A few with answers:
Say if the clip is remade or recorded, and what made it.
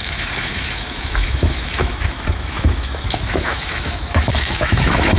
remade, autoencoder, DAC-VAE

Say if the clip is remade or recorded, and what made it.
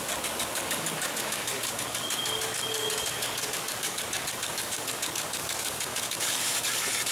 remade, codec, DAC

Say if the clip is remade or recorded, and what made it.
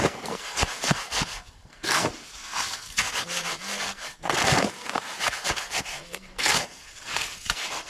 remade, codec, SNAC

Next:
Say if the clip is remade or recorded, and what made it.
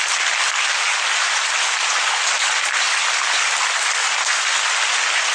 recorded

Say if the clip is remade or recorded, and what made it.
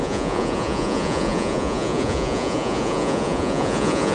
remade, vocoder, Vocos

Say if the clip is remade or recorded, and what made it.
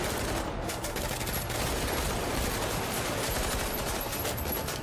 recorded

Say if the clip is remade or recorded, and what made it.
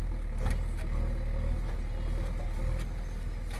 recorded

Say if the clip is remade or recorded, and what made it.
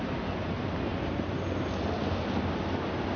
recorded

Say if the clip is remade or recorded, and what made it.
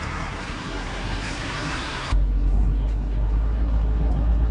remade, codec, SNAC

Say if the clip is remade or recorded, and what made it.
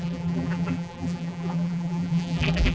remade, vocoder, BigVGAN v2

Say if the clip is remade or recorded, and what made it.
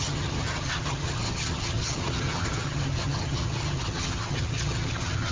remade, vocoder, HiFi-GAN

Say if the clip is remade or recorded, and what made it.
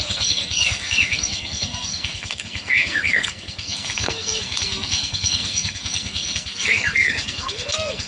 remade, codec, SNAC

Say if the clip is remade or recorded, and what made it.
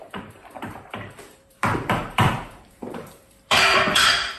remade, vocoder, BigVGAN v2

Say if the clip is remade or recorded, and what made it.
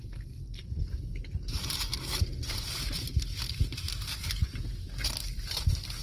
remade, vocoder, BigVGAN v2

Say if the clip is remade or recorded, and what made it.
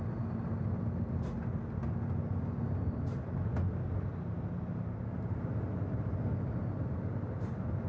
recorded